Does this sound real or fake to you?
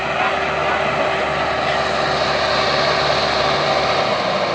real